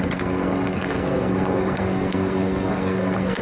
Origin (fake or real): fake